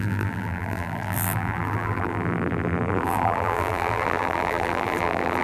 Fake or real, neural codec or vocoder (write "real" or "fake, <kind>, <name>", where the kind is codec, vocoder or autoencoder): fake, vocoder, BigVGAN v2